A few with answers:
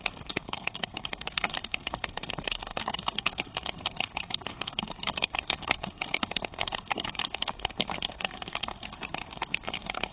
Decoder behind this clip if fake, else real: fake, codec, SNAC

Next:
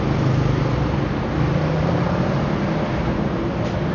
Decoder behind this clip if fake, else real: real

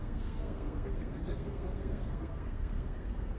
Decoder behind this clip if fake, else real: fake, codec, SNAC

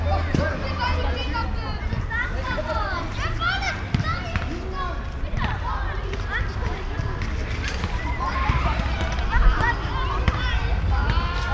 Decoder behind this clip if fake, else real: real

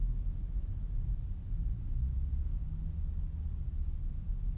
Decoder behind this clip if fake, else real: real